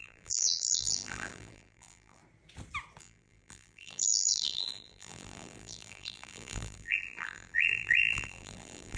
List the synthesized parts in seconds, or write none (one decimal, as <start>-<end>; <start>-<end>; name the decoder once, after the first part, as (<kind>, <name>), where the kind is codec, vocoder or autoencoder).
0.0-2.2 (vocoder, BigVGAN v2); 3.0-9.0